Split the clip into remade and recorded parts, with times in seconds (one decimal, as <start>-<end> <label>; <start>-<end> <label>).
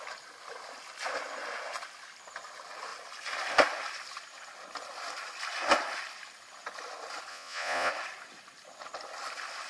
0.0-7.3 recorded; 7.3-7.9 remade; 7.9-9.7 recorded